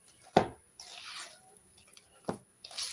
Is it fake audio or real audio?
real